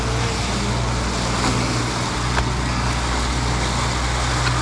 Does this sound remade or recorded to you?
recorded